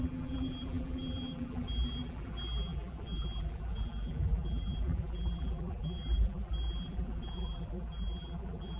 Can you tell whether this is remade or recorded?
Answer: remade